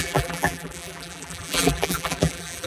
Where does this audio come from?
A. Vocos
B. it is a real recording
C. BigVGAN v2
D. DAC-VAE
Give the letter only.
C